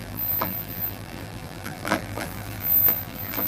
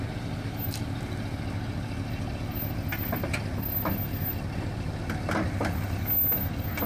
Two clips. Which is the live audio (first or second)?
second